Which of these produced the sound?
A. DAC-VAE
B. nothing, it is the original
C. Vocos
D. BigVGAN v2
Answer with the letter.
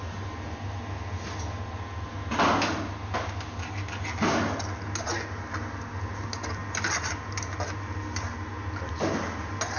B